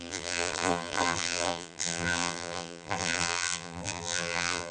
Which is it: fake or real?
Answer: fake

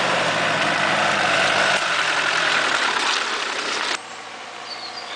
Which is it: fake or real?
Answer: real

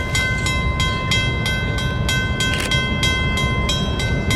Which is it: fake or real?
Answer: real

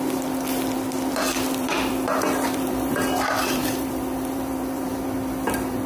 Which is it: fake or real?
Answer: fake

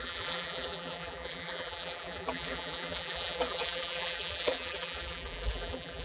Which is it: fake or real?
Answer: fake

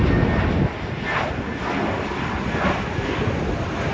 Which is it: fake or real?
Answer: real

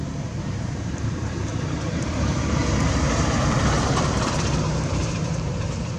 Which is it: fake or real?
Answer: fake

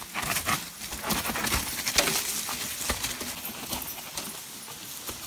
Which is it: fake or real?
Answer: real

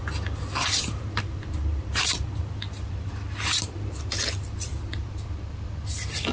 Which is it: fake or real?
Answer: fake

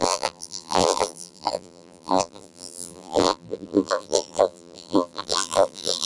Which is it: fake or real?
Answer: fake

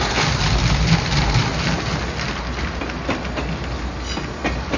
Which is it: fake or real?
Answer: real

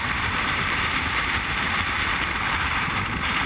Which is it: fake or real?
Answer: fake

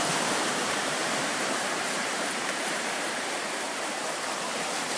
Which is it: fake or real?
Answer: fake